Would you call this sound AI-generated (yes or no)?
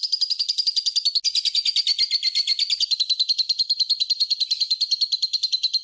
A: no